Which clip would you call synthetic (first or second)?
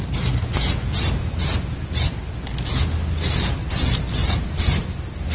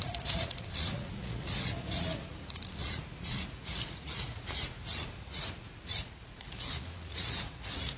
second